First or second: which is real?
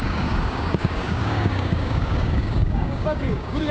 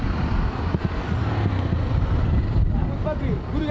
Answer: second